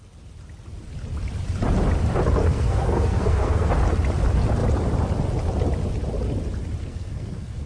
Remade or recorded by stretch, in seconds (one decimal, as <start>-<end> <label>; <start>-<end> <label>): 0.0-2.4 recorded; 2.4-3.7 remade; 3.7-6.8 recorded; 6.8-7.7 remade